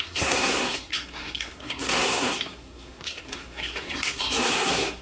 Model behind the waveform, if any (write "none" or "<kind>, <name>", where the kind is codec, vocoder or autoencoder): codec, SNAC